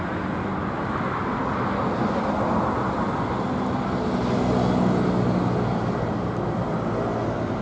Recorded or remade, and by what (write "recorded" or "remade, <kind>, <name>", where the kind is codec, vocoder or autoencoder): recorded